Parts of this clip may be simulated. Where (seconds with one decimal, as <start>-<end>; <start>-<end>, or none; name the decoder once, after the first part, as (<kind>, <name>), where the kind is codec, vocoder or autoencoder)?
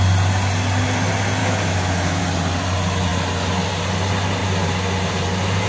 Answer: 1.4-2.2 (autoencoder, DAC-VAE)